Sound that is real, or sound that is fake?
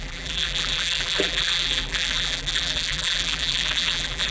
fake